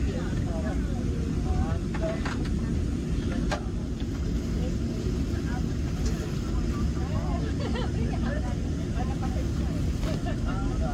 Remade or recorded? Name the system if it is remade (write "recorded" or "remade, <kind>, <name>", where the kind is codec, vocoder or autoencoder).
recorded